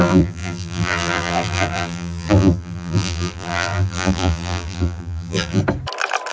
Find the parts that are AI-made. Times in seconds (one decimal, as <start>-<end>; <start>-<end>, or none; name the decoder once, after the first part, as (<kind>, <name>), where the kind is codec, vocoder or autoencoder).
0.0-5.6 (vocoder, BigVGAN v2)